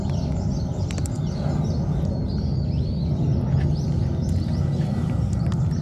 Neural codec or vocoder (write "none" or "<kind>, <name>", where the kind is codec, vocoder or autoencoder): none